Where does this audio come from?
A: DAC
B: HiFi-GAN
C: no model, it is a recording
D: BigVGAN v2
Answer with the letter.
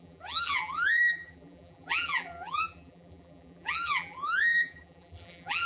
D